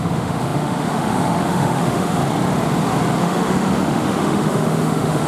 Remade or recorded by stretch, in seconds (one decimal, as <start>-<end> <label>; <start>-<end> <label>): 0.0-2.2 remade; 2.2-3.2 recorded; 3.2-5.3 remade